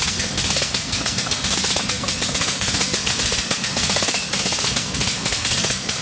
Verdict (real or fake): fake